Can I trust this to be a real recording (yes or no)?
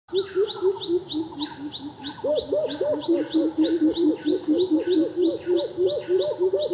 yes